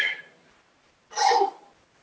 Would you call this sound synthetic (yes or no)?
no